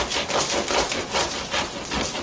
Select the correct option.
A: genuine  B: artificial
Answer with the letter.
A